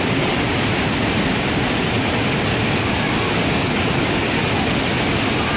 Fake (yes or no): no